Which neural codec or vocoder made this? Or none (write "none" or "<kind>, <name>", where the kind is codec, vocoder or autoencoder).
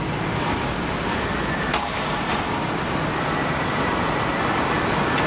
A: none